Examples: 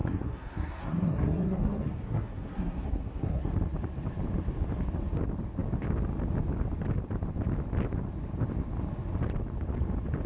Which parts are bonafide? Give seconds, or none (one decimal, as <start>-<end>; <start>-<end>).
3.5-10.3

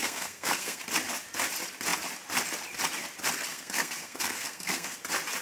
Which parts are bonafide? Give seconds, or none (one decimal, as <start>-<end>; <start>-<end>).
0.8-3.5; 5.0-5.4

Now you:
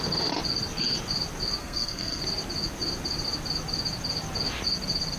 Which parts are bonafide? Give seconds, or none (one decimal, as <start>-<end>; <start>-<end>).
0.0-1.6; 2.2-5.2

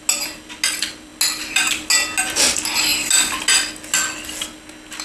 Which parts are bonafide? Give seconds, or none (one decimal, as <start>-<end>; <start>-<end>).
0.0-5.0